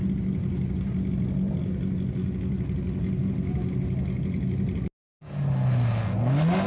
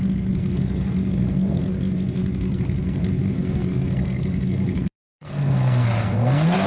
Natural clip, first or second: first